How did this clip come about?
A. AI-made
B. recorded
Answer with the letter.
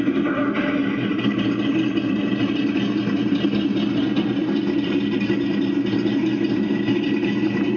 B